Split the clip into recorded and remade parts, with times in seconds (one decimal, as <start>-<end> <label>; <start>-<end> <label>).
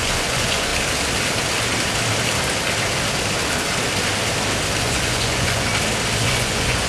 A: 0.0-0.7 remade; 0.7-4.8 recorded; 4.8-5.7 remade; 5.7-6.2 recorded; 6.2-6.9 remade